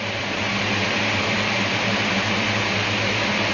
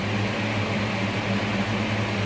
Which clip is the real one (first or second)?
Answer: second